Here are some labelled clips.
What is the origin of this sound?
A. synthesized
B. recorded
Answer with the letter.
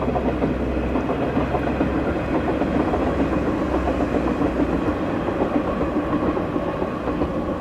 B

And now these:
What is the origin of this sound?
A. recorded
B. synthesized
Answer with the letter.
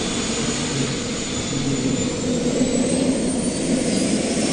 A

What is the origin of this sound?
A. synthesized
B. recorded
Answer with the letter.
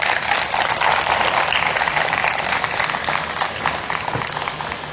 B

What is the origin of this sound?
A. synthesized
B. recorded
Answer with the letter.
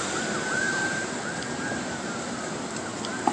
A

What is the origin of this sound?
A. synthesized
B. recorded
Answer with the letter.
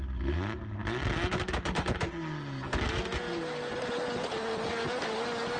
B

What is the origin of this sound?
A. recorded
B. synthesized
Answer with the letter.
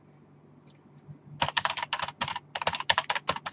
A